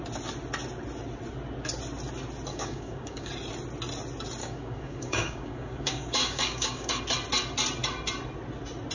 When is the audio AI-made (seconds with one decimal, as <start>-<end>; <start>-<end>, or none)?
2.5-3.3; 4.4-7.0